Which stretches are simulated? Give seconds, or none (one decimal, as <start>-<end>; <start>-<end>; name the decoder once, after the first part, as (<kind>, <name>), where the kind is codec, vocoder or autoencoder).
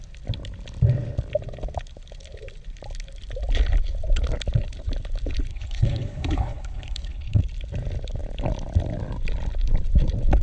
5.5-7.4 (codec, HILCodec)